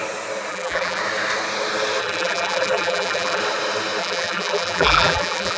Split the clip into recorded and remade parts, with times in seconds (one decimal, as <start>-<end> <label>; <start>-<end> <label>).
0.0-0.5 recorded; 0.5-1.0 remade; 1.0-2.0 recorded; 2.0-3.4 remade; 3.4-4.0 recorded; 4.0-5.6 remade

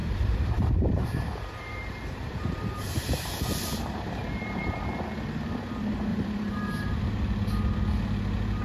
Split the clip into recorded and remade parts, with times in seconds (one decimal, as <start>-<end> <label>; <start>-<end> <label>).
0.0-4.8 remade; 4.8-6.1 recorded; 6.1-7.0 remade; 7.0-8.6 recorded

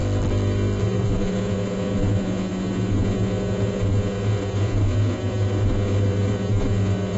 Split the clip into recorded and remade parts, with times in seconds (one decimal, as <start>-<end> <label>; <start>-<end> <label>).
0.0-0.8 recorded; 0.8-7.2 remade

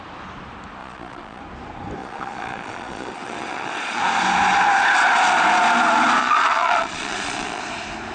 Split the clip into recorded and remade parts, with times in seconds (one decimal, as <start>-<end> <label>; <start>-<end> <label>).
0.0-0.8 recorded; 0.8-1.4 remade; 1.4-2.0 recorded; 2.0-4.0 remade; 4.0-6.2 recorded; 6.2-7.6 remade; 7.6-8.1 recorded

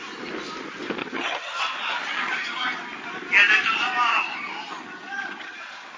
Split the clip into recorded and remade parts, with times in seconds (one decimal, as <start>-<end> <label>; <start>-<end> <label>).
0.0-1.0 recorded; 1.0-1.6 remade; 1.6-2.1 recorded; 2.1-2.8 remade; 2.8-4.1 recorded; 4.1-5.6 remade; 5.6-6.0 recorded

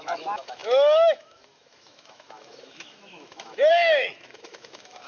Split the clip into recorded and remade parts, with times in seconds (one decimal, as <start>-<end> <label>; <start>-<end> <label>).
0.0-5.1 remade

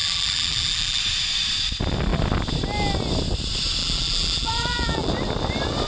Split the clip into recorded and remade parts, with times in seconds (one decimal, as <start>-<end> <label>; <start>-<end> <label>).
0.0-1.0 remade; 1.0-3.8 recorded; 3.8-5.1 remade; 5.1-5.9 recorded